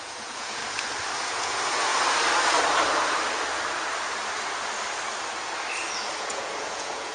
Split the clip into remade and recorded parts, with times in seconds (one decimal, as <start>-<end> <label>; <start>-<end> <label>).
0.0-0.6 remade; 0.6-1.3 recorded; 1.3-1.9 remade; 1.9-6.2 recorded; 6.2-7.1 remade